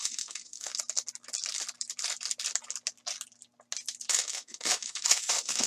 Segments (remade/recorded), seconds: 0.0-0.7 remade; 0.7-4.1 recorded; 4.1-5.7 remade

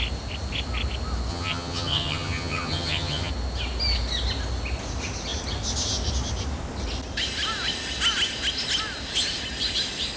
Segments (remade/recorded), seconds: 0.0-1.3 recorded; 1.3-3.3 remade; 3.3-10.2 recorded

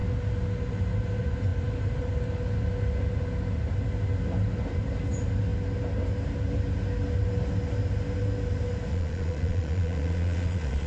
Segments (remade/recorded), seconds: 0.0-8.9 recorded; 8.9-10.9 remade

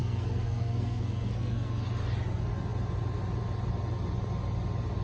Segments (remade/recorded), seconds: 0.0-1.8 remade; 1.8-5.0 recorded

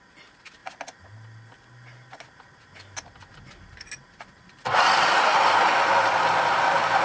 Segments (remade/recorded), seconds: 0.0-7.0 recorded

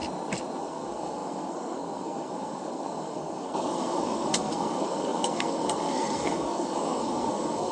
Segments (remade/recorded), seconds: 0.0-0.6 recorded; 0.6-7.7 remade

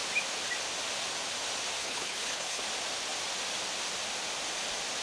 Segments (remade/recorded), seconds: 0.0-1.8 recorded; 1.8-2.6 remade; 2.6-5.0 recorded